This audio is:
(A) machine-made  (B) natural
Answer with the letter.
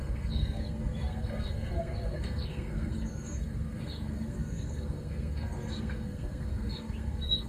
A